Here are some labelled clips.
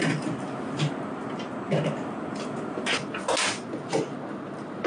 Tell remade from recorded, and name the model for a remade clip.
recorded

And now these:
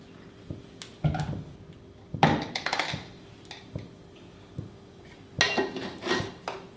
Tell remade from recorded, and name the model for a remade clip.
recorded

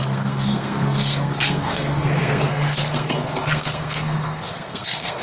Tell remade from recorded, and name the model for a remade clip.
remade, codec, SNAC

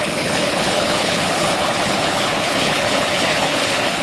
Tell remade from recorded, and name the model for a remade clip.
remade, codec, HILCodec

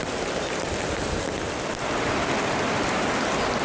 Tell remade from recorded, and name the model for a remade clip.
recorded